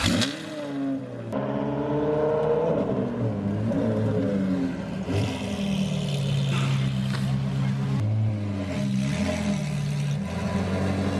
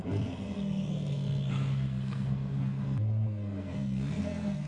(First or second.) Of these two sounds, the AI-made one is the second